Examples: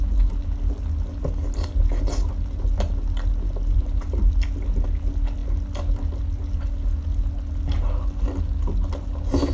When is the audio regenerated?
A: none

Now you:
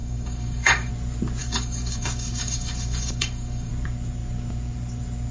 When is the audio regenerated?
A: 0.0-0.9 (codec, DAC); 1.4-3.7

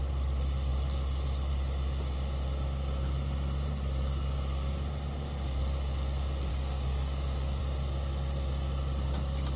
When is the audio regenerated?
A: 6.5-7.6 (codec, DAC)